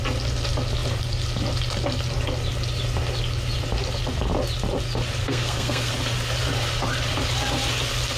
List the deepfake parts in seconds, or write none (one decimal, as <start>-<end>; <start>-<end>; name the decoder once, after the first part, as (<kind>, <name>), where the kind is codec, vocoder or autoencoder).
5.2-5.9 (codec, SNAC)